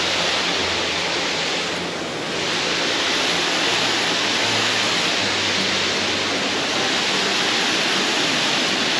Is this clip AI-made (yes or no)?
no